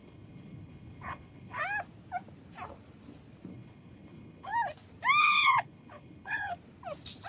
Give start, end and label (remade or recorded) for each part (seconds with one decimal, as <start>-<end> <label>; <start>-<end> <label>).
0.0-1.6 remade; 1.6-3.5 recorded; 3.5-4.5 remade; 4.5-5.2 recorded; 5.2-6.6 remade; 6.6-7.3 recorded